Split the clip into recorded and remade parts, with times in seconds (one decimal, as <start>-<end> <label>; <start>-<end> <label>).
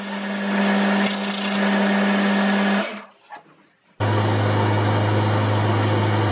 0.0-6.3 recorded